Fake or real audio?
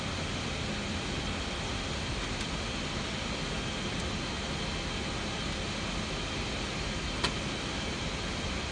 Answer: real